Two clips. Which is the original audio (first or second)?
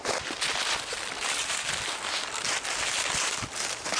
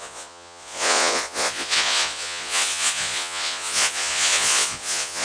first